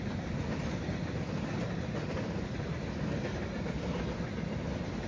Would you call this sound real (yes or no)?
yes